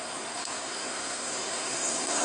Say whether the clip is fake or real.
fake